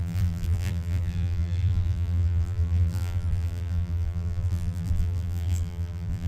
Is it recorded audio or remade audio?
remade